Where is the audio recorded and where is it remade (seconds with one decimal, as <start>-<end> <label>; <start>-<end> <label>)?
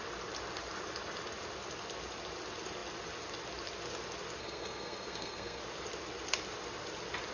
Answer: 0.0-4.4 recorded; 4.4-5.6 remade; 5.6-7.3 recorded